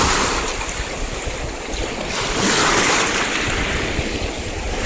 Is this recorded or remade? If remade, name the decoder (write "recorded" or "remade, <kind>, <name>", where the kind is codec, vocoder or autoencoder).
recorded